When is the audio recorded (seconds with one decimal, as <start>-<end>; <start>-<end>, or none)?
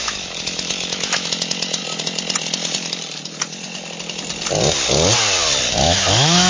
1.8-5.7